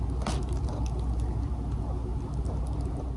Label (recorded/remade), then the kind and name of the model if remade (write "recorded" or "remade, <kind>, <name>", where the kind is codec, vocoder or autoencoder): recorded